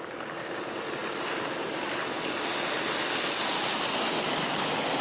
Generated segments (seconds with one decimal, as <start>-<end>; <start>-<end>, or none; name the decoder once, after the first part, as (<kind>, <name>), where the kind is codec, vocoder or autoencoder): none